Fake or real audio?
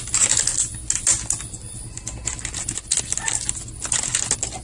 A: real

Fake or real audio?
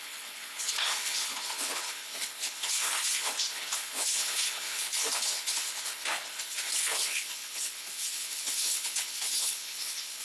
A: fake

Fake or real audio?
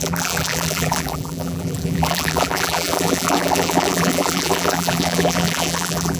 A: fake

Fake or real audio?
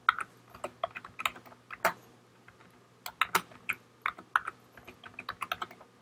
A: real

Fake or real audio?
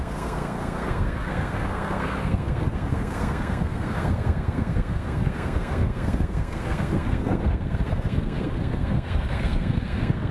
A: fake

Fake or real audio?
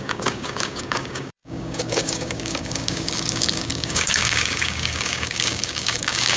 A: fake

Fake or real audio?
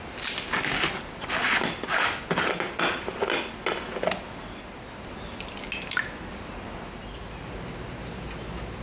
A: real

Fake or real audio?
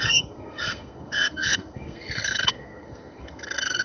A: fake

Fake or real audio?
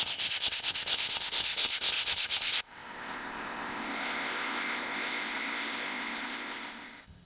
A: fake